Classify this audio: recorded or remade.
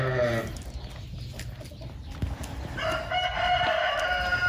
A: recorded